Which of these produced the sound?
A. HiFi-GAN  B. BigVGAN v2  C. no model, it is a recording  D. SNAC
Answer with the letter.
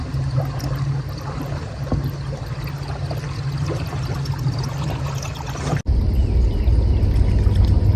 C